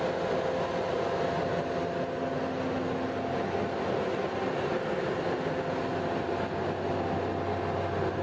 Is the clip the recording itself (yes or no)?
yes